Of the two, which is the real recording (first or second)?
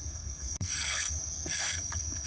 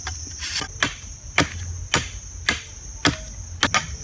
second